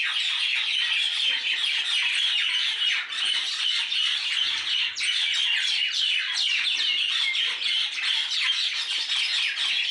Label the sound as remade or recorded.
recorded